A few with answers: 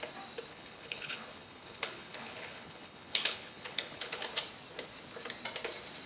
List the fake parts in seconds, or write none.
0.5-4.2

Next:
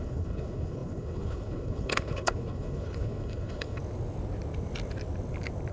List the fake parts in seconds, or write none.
0.0-3.8

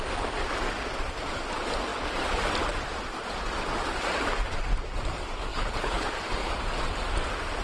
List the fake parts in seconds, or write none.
5.5-6.1

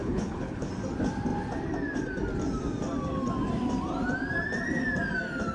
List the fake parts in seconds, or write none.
0.0-0.7

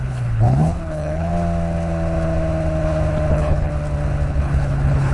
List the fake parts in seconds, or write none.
0.0-1.3; 3.3-3.7; 4.3-5.1

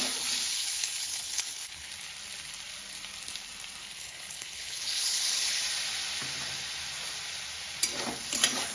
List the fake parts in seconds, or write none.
0.5-1.9; 3.8-5.6

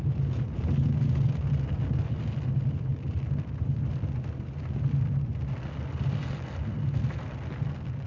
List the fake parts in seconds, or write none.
none